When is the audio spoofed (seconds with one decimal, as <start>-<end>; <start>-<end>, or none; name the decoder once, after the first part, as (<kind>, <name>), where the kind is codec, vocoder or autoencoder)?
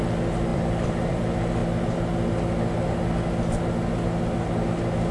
0.5-1.2 (vocoder, BigVGAN v2)